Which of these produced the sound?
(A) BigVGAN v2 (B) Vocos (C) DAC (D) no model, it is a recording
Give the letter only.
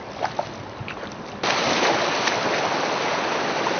D